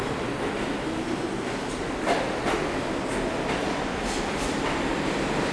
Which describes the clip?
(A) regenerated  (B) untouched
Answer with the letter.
B